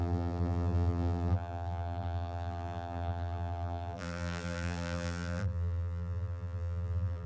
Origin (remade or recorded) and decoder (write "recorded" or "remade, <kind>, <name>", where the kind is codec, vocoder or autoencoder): remade, vocoder, BigVGAN v2